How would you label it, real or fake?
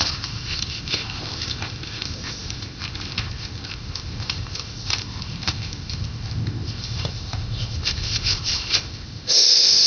fake